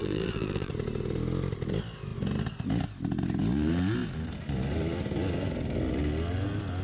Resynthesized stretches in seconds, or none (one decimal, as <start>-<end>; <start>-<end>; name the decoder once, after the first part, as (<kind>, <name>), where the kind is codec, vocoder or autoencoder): 0.0-0.7 (vocoder, BigVGAN v2)